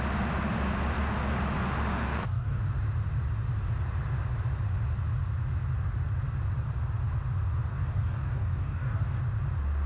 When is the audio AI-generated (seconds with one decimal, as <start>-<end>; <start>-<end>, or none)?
2.0-2.6; 7.7-9.2